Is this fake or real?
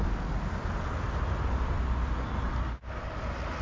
real